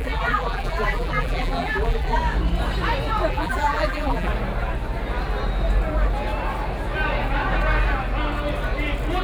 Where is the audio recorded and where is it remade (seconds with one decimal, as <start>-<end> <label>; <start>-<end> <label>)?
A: 0.0-2.2 remade; 2.2-3.3 recorded; 3.3-4.3 remade; 4.3-9.2 recorded